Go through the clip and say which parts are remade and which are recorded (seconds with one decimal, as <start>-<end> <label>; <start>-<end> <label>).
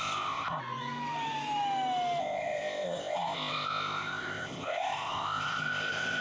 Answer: 0.0-0.6 remade; 0.6-2.2 recorded; 2.2-6.2 remade